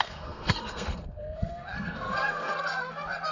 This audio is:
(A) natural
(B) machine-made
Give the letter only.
B